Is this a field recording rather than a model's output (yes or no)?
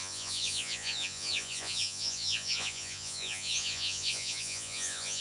no